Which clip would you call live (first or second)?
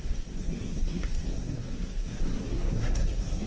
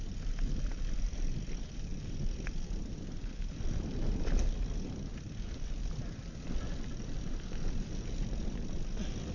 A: second